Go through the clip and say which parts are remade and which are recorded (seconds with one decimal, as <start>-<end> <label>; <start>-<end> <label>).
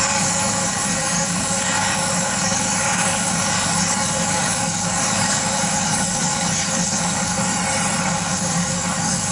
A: 0.0-7.5 remade; 7.5-8.0 recorded; 8.0-9.3 remade